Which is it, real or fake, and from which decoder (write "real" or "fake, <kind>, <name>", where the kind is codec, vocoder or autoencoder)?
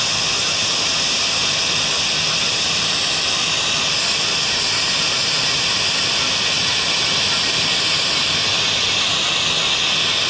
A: real